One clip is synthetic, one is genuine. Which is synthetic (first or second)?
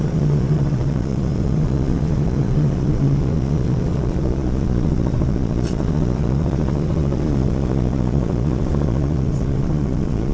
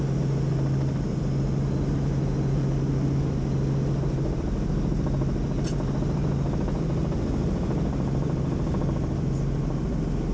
first